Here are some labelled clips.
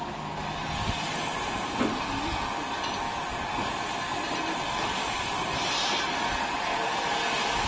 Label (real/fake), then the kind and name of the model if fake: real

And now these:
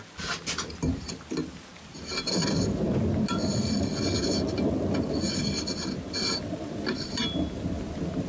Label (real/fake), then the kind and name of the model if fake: real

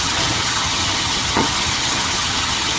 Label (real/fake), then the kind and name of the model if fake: fake, vocoder, HiFi-GAN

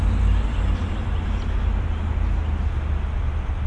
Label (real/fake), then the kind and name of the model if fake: real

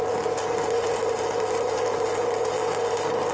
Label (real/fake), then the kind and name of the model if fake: real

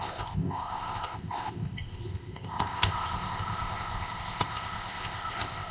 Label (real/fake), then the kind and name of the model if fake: fake, codec, ZipCodec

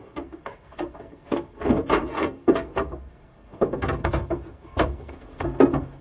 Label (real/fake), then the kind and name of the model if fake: fake, codec, SNAC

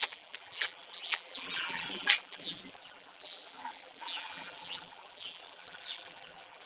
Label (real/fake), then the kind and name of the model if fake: fake, vocoder, BigVGAN v2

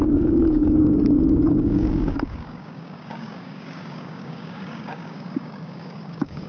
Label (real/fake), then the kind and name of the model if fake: fake, codec, DAC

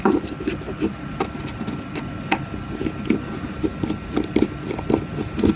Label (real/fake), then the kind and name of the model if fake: real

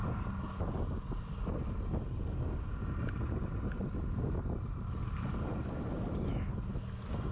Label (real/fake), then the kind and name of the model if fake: real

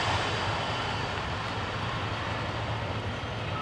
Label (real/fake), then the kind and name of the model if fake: real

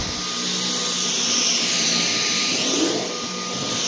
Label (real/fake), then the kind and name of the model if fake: real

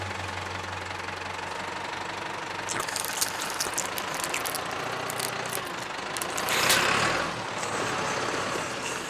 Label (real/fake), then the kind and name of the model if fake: real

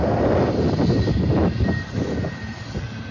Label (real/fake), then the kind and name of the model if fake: real